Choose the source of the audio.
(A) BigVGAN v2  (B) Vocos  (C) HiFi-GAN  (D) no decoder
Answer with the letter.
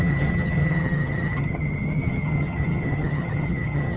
C